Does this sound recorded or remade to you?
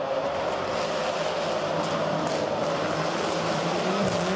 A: recorded